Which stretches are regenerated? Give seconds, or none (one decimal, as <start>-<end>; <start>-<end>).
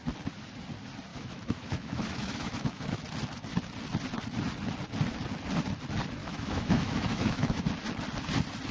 1.1-3.0; 6.2-7.7